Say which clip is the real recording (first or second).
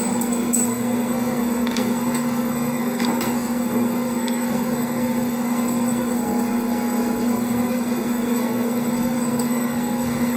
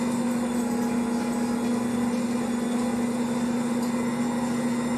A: second